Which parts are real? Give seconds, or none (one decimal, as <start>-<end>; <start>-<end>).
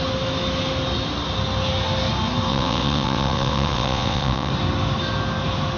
0.0-2.5; 4.5-5.8